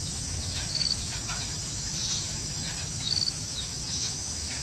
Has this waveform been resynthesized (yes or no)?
yes